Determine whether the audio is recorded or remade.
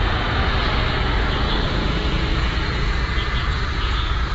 remade